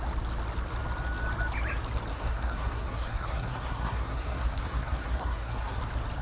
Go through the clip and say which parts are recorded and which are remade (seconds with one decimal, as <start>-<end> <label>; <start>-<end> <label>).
0.0-2.1 recorded; 2.1-5.8 remade; 5.8-6.2 recorded